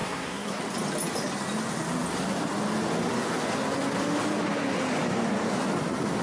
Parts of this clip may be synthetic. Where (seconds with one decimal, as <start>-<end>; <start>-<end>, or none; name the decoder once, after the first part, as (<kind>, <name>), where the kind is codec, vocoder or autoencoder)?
0.0-0.6 (codec, SNAC)